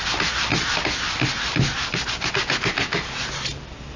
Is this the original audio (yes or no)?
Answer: yes